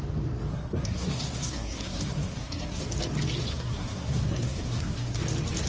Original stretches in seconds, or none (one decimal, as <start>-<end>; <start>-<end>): 0.0-0.5; 2.8-3.5; 5.2-5.7